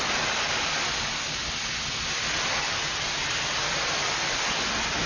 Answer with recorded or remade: recorded